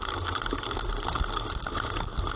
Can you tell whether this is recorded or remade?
recorded